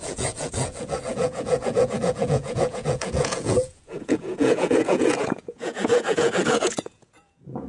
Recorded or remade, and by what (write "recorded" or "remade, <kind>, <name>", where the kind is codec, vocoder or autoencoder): remade, vocoder, Vocos